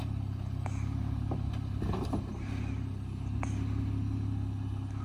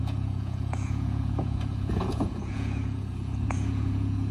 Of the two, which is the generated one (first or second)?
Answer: second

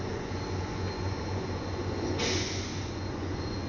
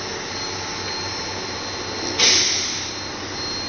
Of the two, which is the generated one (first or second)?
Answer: first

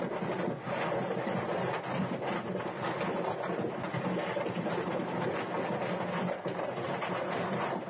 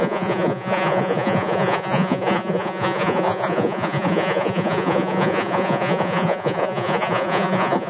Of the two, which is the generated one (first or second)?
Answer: second